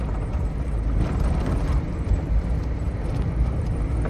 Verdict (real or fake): fake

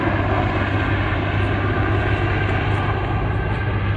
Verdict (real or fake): real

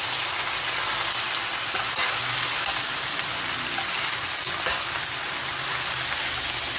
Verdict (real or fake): real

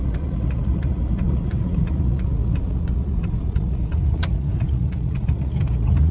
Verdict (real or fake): fake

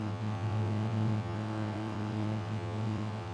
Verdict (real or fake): fake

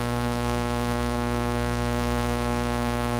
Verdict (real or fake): fake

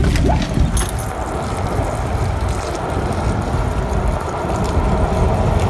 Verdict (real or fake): real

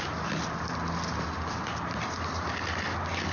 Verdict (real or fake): real